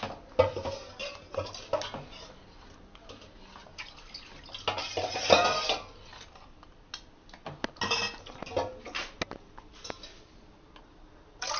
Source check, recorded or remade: recorded